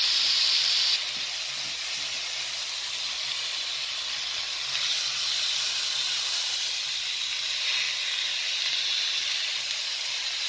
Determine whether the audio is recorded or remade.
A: recorded